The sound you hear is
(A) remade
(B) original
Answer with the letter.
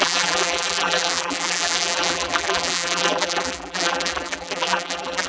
A